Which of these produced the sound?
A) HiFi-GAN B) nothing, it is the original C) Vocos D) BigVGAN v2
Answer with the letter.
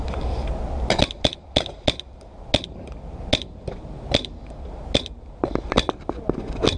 B